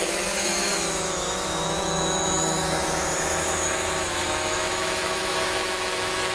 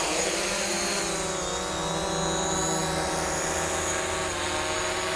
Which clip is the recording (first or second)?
second